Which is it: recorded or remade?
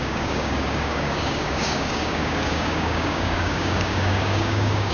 remade